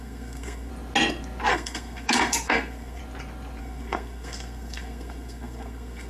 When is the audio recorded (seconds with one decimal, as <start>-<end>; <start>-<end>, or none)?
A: 0.7-1.5; 3.0-3.6